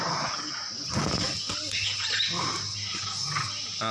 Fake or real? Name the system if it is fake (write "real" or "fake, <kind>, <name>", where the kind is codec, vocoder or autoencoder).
real